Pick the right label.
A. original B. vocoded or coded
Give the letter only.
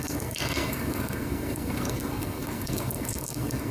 B